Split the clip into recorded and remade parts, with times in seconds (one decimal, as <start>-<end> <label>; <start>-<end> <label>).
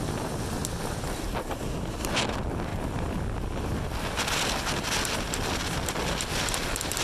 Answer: 0.0-7.0 recorded